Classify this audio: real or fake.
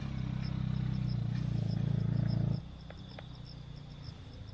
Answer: real